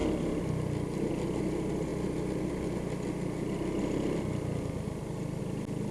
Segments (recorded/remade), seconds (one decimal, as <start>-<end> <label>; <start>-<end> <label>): 0.0-5.9 recorded